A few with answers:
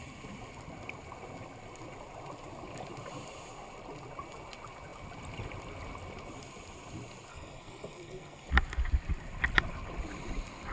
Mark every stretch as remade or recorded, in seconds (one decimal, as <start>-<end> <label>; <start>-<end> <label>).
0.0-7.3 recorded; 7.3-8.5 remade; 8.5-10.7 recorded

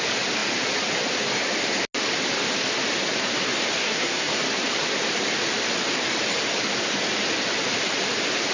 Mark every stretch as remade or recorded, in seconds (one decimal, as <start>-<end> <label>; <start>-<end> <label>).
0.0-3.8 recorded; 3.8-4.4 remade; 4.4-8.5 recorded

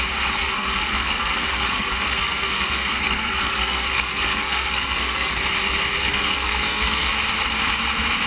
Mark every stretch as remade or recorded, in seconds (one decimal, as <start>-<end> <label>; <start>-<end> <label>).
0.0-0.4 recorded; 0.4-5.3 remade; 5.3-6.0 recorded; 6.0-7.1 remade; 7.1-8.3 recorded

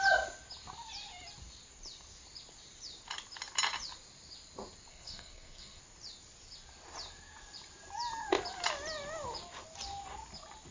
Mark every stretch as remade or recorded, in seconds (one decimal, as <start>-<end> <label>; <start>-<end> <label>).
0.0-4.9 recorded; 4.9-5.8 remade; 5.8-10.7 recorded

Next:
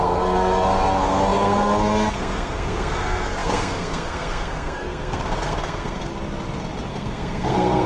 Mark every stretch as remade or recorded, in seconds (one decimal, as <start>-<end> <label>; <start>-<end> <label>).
0.0-6.1 remade; 6.1-6.9 recorded; 6.9-7.9 remade

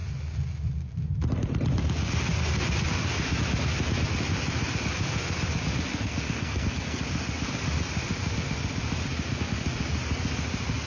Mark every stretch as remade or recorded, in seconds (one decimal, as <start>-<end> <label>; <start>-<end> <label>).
0.0-5.9 recorded; 5.9-7.0 remade; 7.0-10.9 recorded

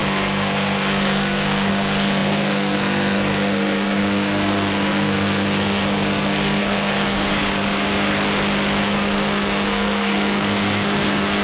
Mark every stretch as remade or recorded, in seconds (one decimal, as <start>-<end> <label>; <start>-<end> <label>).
0.0-8.1 remade; 8.1-8.8 recorded; 8.8-11.4 remade

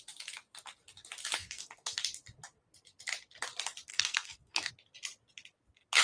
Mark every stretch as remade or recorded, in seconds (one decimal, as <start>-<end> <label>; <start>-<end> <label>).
0.0-1.4 recorded; 1.4-2.0 remade; 2.0-3.9 recorded; 3.9-4.7 remade; 4.7-6.0 recorded